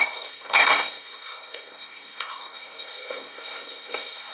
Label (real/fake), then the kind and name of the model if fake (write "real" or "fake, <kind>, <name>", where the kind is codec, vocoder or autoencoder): fake, codec, SNAC